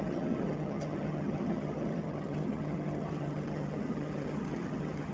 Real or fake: fake